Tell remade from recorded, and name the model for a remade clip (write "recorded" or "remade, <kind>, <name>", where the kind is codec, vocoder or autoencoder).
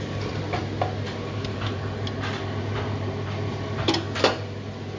recorded